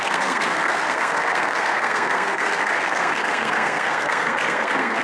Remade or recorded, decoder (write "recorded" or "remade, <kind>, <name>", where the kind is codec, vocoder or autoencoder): remade, codec, SNAC